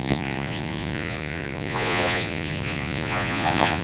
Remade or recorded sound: remade